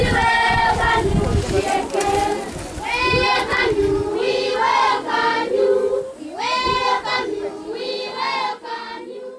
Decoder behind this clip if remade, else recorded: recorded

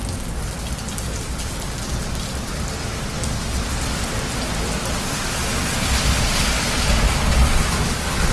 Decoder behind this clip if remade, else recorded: recorded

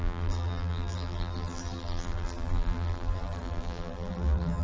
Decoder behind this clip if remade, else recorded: remade, vocoder, BigVGAN v2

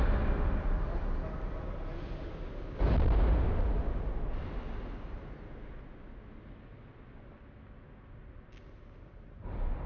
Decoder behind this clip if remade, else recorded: recorded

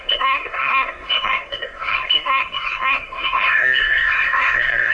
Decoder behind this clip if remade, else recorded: remade, codec, SNAC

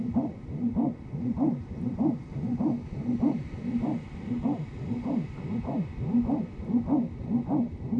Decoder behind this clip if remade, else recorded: recorded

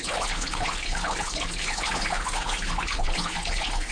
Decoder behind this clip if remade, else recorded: remade, codec, HILCodec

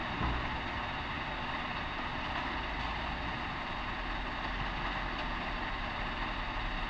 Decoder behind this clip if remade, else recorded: recorded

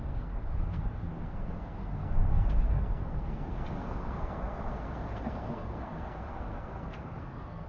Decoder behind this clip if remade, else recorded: remade, codec, SNAC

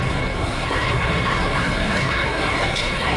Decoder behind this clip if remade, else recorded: remade, codec, SNAC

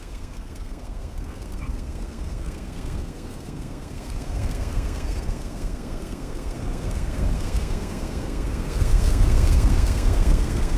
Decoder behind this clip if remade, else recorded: remade, codec, SNAC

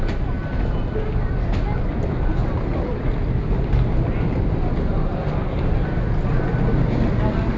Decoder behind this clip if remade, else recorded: recorded